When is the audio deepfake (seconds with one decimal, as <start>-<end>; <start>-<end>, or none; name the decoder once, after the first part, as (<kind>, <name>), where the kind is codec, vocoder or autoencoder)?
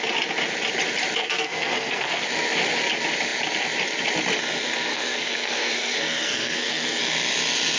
1.2-2.2 (codec, SNAC); 4.9-7.0